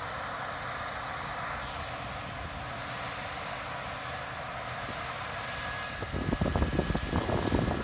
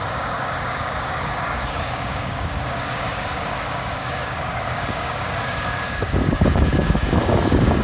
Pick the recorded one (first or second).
first